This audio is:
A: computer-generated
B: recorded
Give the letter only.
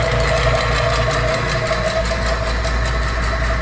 B